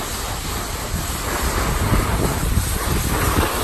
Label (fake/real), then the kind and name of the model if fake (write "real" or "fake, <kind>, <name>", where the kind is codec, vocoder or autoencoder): real